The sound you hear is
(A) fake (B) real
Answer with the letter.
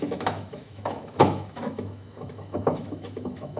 A